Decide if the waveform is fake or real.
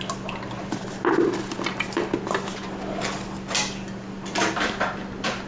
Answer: real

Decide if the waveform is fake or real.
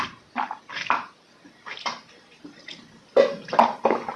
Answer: real